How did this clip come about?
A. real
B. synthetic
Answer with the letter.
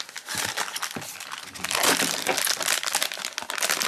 A